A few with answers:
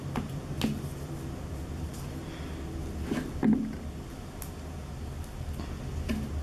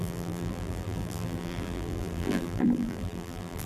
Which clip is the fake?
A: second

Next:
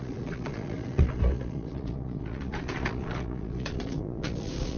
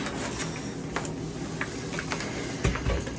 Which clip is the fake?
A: first